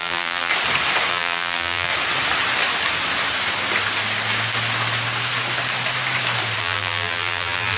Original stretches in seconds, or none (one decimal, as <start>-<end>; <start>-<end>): 0.5-1.1; 1.9-6.6